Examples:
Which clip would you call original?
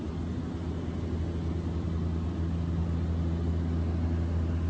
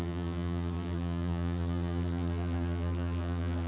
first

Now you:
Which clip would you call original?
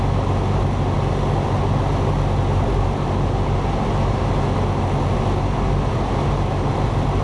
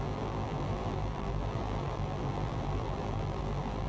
first